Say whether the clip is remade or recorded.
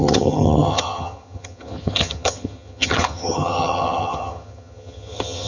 remade